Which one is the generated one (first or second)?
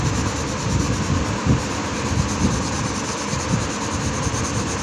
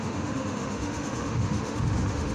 second